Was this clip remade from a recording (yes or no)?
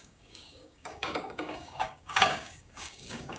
yes